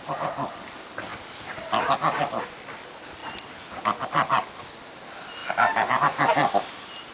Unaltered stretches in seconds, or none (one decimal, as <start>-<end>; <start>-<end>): 0.0-7.1